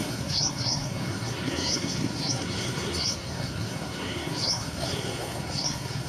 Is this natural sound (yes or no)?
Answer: no